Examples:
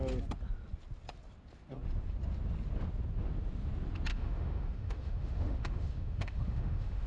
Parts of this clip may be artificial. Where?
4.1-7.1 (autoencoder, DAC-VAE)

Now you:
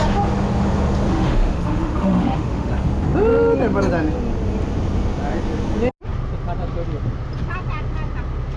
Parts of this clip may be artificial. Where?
1.1-2.7 (autoencoder, DAC-VAE)